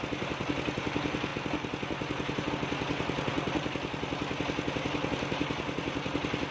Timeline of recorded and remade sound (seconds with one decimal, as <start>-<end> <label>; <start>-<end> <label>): 0.0-6.5 recorded